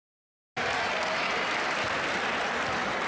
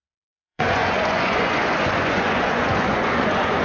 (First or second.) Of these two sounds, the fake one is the second